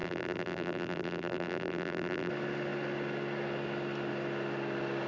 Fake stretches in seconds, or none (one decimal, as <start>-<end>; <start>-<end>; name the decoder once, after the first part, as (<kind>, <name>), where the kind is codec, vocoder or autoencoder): 0.0-2.3 (vocoder, BigVGAN v2)